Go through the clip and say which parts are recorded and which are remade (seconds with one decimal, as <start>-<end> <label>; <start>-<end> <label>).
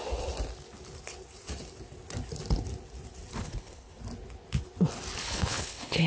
0.0-3.4 recorded; 3.4-4.0 remade; 4.0-5.2 recorded; 5.2-6.1 remade